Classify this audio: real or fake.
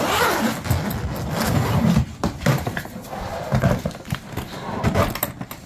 real